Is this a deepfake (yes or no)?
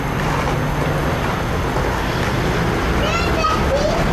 no